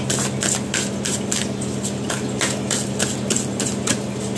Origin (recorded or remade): recorded